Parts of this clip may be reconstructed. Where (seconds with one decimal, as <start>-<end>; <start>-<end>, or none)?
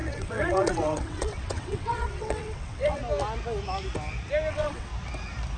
0.0-3.0; 4.5-4.9